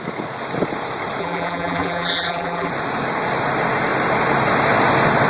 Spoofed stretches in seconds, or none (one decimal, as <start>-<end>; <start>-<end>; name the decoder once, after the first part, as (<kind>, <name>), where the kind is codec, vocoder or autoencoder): 1.2-2.7 (vocoder, BigVGAN v2)